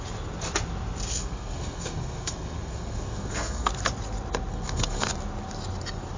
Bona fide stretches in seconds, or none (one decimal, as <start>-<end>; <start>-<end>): 0.0-1.1; 3.7-4.5; 5.1-6.2